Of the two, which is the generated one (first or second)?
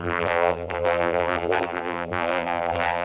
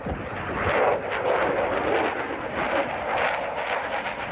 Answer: first